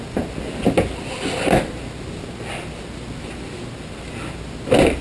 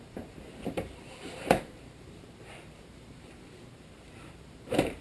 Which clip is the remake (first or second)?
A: second